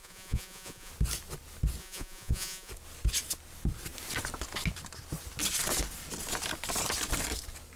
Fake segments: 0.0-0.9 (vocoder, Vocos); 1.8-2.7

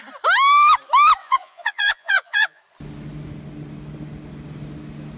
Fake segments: 1.2-2.6 (vocoder, Vocos)

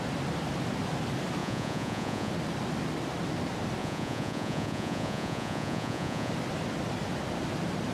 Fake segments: 1.4-2.3 (vocoder, Vocos); 3.8-6.3